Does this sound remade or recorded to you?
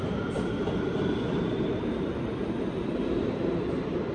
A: recorded